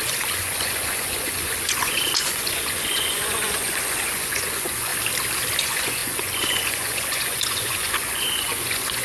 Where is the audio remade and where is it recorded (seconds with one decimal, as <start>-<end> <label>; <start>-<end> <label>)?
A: 0.0-4.9 remade; 4.9-5.6 recorded; 5.6-9.0 remade